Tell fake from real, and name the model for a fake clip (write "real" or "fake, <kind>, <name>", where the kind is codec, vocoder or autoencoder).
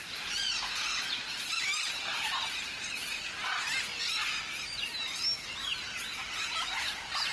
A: real